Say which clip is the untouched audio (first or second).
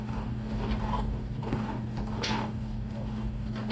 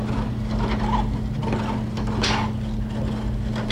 second